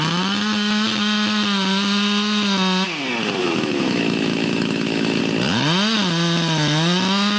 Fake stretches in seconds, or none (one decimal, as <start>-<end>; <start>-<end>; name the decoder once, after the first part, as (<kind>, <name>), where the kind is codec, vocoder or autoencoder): 3.4-5.2 (autoencoder, DAC-VAE)